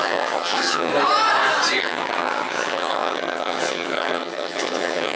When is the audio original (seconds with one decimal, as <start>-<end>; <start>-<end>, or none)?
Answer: 0.9-1.8